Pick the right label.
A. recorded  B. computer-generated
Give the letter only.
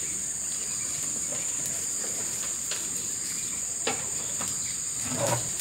A